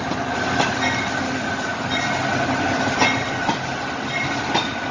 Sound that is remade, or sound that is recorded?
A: recorded